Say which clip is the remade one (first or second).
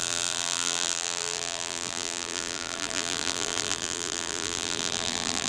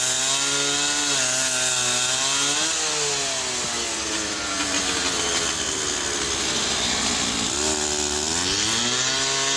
first